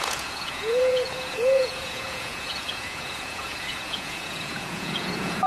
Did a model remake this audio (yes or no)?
yes